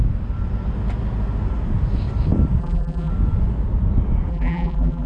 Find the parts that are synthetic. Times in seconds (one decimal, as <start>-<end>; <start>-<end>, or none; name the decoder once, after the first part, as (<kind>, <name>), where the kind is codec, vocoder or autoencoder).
2.6-3.1 (vocoder, BigVGAN v2); 4.3-5.1